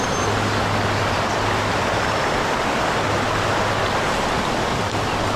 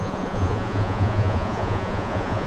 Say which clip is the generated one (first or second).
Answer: second